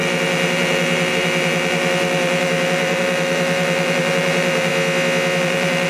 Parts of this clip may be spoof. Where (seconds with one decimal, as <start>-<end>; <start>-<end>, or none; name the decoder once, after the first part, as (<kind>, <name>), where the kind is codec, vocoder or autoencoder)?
0.0-4.7 (vocoder, BigVGAN v2); 5.4-5.9